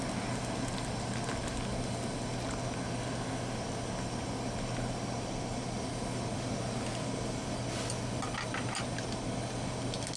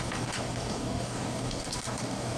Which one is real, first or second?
first